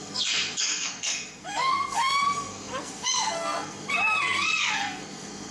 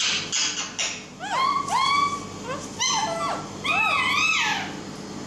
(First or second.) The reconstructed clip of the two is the first